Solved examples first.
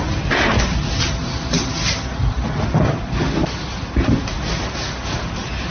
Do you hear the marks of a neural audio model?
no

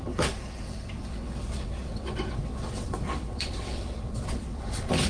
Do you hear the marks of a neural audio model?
yes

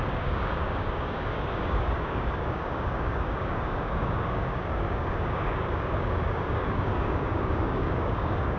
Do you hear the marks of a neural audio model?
yes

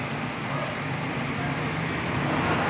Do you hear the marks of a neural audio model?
no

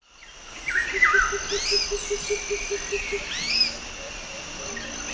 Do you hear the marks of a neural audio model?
no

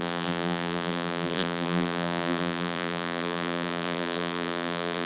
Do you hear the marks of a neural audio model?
yes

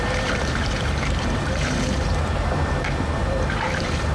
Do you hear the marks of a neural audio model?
yes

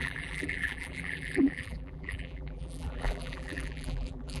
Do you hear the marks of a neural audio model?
yes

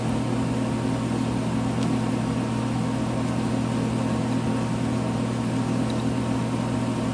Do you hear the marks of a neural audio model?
no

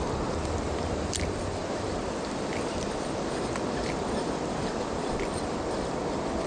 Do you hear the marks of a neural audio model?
yes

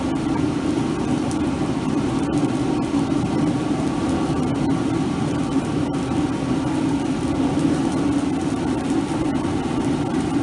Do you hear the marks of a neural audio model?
no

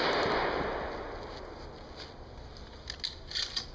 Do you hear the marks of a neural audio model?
no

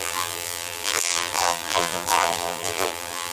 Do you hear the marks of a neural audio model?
yes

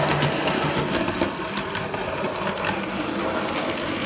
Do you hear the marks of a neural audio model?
no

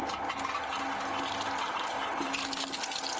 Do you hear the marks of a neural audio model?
no